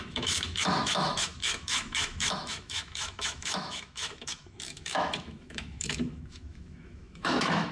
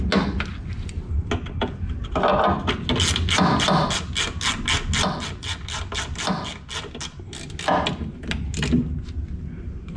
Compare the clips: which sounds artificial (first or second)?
first